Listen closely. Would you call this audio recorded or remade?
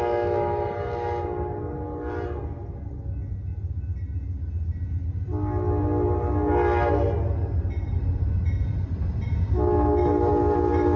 recorded